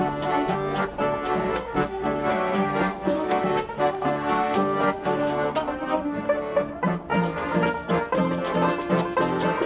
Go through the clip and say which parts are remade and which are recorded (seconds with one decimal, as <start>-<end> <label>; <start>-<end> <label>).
0.0-1.5 recorded; 1.5-6.2 remade; 6.2-9.7 recorded